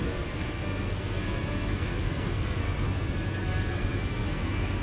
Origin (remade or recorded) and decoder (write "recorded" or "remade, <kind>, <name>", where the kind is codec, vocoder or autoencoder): remade, codec, SNAC